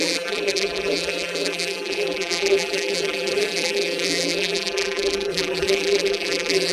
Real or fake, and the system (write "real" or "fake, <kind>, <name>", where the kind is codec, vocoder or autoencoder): fake, vocoder, BigVGAN v2